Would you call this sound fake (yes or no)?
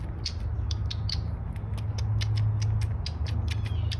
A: no